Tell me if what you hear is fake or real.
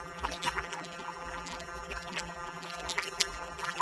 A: fake